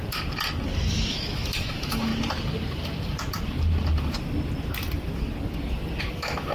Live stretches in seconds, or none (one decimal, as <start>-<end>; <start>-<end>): 0.0-0.9; 2.1-6.0